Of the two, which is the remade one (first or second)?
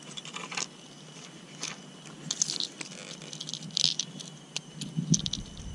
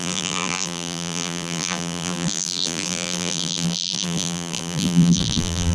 second